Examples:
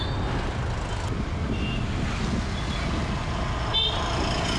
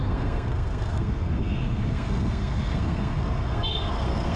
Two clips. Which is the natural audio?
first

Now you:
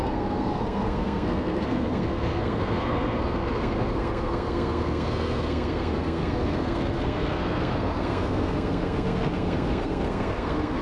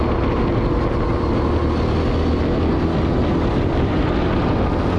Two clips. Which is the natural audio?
second